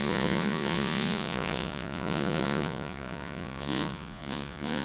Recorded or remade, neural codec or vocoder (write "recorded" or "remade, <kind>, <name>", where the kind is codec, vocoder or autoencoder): remade, vocoder, Vocos